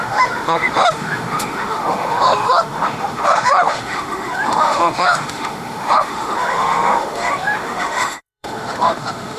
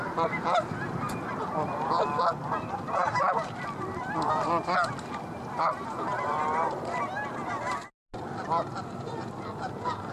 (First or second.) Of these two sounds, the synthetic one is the first